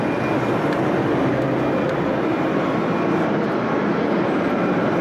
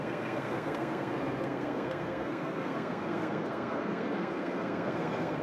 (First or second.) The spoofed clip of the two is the second